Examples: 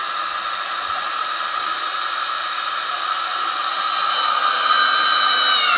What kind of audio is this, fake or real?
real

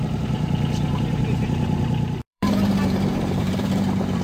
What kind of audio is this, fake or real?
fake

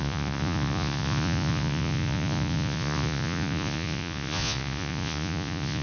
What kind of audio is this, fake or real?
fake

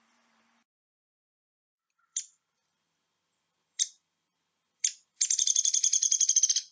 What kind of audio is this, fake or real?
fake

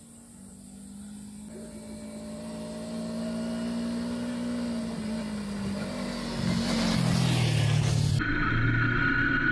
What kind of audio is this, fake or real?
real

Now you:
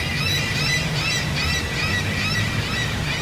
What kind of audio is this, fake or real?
real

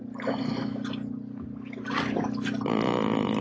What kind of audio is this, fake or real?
real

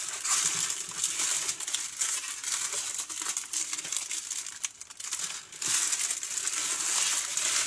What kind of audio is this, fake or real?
real